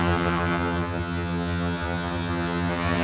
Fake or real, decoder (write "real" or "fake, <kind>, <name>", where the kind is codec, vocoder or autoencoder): fake, vocoder, HiFi-GAN